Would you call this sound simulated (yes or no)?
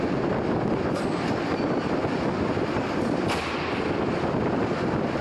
no